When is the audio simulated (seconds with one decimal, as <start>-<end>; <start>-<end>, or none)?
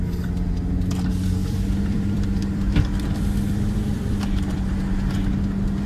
1.4-4.7